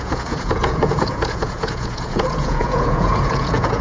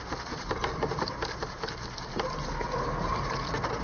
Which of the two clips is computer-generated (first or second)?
first